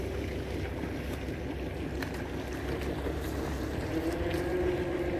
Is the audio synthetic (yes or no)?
no